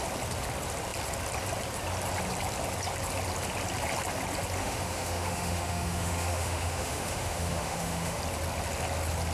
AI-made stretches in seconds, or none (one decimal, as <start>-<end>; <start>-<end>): 4.6-8.2